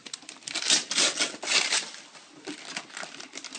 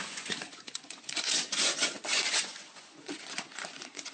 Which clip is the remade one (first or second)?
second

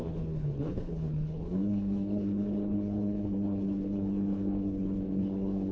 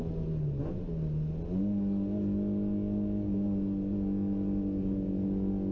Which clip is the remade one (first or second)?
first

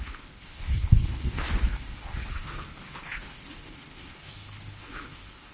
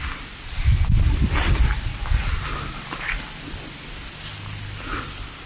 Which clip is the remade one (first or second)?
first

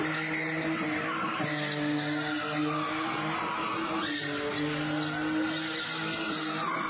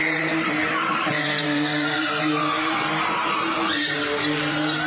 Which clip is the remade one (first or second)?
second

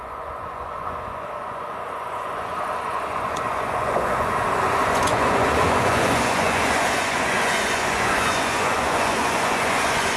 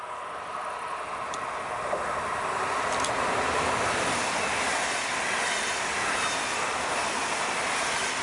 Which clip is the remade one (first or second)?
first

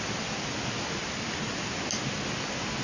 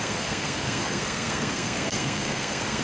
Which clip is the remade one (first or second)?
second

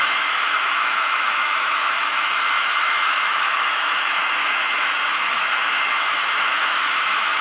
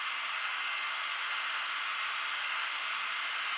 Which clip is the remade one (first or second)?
first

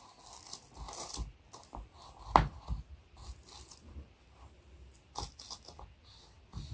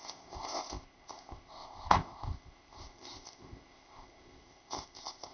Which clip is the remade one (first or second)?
second